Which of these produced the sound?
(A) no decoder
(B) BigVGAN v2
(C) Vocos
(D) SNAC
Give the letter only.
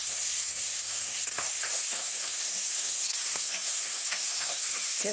D